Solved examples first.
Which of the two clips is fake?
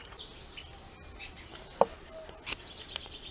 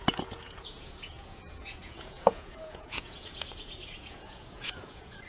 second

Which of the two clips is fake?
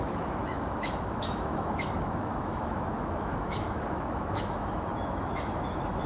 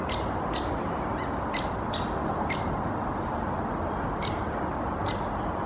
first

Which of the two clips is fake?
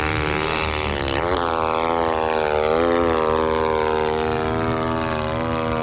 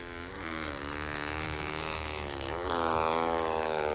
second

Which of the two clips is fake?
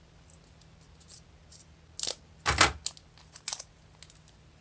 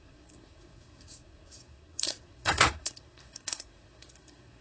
second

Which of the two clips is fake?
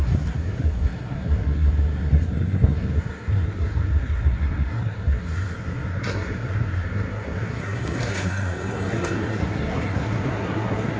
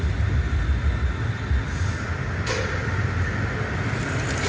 first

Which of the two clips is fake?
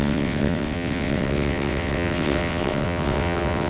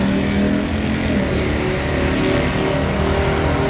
first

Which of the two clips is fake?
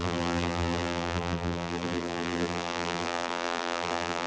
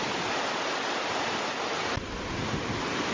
first